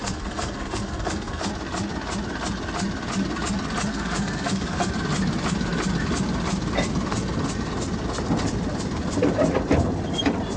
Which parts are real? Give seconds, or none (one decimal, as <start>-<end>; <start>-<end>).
1.5-3.9; 4.9-10.6